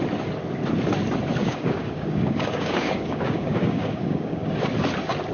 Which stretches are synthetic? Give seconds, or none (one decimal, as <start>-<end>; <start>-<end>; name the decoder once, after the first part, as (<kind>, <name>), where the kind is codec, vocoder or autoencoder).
1.4-4.6 (codec, DAC)

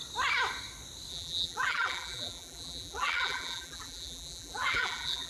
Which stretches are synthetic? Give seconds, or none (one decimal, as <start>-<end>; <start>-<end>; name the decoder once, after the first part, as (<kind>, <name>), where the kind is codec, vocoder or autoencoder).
1.1-5.3 (vocoder, BigVGAN v2)

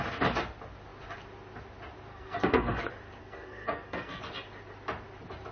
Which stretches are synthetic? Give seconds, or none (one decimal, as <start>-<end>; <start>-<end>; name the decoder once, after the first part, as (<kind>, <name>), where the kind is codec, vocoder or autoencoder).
2.1-2.8 (codec, SNAC); 3.2-4.2

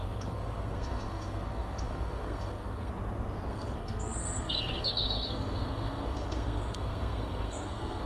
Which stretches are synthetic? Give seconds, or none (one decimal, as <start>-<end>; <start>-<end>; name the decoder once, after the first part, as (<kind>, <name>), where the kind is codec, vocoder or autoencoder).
0.0-2.9 (codec, SNAC); 3.5-8.1